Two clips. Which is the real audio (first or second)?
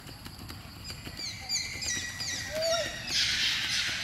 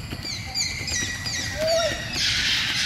first